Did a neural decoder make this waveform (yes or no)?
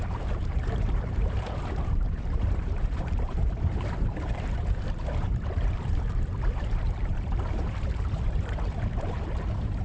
yes